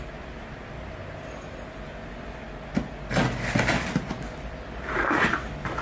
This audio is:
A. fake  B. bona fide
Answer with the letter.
B